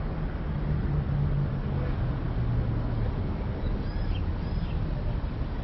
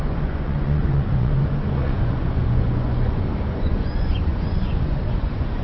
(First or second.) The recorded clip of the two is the first